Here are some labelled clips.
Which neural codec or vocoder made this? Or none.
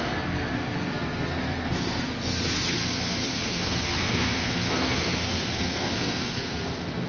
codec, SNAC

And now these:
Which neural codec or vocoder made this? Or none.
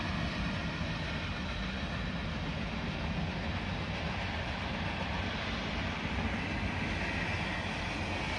none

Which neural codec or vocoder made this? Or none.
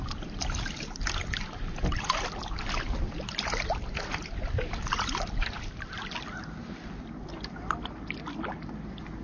none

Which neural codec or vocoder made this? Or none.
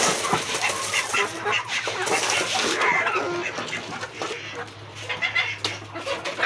none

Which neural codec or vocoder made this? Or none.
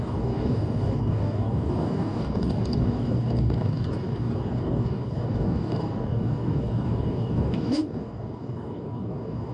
codec, DAC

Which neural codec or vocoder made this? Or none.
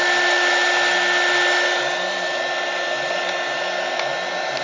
none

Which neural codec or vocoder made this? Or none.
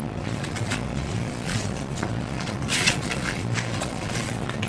vocoder, Vocos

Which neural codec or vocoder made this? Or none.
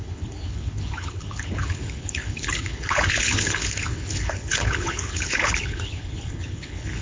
codec, HILCodec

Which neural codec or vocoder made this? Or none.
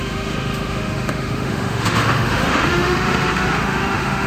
autoencoder, DAC-VAE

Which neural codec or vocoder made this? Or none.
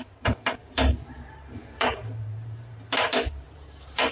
vocoder, BigVGAN v2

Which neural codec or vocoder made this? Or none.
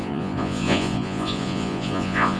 vocoder, Vocos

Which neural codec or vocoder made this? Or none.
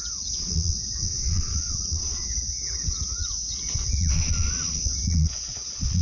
vocoder, Vocos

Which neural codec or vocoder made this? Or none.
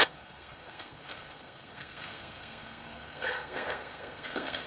codec, SNAC